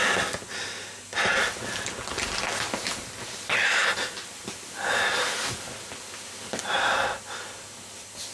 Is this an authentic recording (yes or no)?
yes